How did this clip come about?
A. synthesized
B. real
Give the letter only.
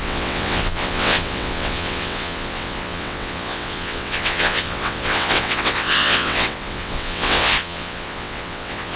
A